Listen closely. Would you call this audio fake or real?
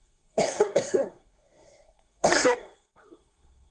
fake